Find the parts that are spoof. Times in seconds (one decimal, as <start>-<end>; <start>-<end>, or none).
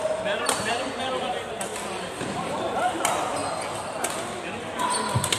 0.0-1.7; 2.2-3.4